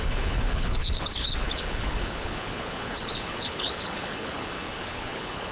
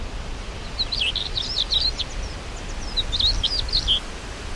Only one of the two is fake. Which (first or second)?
first